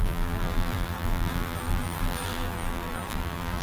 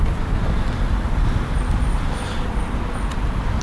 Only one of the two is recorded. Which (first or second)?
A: second